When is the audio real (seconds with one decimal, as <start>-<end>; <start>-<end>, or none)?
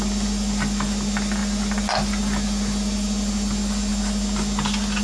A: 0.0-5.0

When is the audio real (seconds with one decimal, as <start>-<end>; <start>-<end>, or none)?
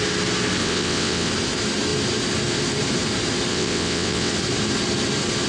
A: 0.0-0.6; 1.3-3.5; 4.3-5.5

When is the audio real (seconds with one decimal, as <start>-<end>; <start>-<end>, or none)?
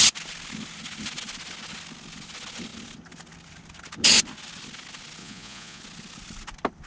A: 0.0-5.2; 5.8-6.9